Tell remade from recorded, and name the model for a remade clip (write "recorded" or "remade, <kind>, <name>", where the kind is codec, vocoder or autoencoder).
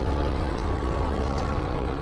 remade, vocoder, WaveNeXt